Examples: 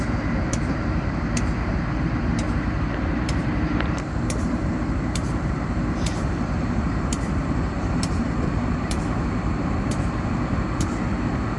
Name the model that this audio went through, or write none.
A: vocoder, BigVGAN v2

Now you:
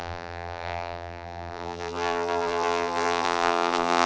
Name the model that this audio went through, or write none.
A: vocoder, BigVGAN v2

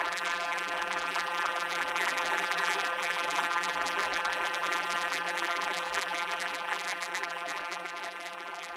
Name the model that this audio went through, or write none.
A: vocoder, BigVGAN v2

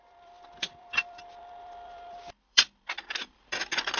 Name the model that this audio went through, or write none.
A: vocoder, BigVGAN v2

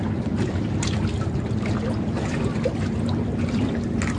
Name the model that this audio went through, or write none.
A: none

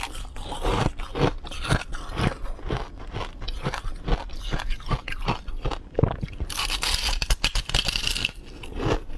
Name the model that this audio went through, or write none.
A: none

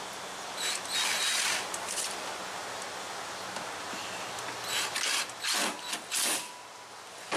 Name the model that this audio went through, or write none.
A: none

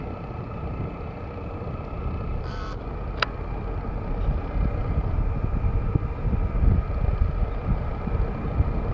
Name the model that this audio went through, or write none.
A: none